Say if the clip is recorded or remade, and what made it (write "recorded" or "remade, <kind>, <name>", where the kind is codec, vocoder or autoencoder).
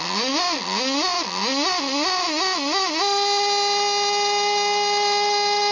recorded